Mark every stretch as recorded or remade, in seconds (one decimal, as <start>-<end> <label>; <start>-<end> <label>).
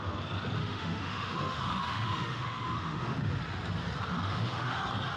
0.0-0.6 recorded; 0.6-3.3 remade; 3.3-4.1 recorded; 4.1-4.8 remade; 4.8-5.2 recorded